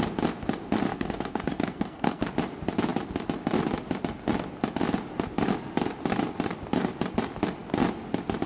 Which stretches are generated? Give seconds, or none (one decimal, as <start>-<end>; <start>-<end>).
0.9-2.2